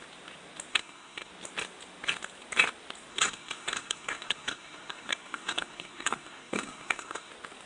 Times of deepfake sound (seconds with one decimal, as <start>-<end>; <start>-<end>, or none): 0.7-1.3; 3.1-7.3